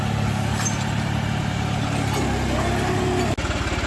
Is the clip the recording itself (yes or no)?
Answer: yes